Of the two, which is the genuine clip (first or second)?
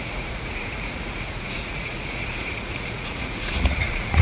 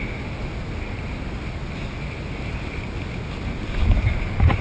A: second